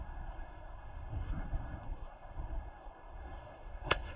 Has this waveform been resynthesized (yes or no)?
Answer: yes